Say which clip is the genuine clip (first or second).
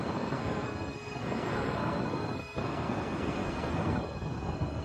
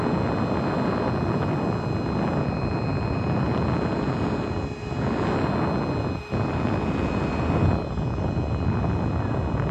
second